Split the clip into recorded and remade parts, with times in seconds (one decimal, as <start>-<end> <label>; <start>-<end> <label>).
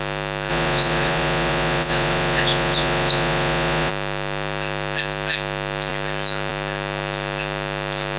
0.0-0.5 recorded; 0.5-3.9 remade; 3.9-8.2 recorded